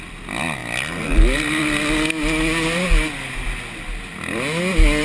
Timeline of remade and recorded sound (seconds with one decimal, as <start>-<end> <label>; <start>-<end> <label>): 0.0-5.0 recorded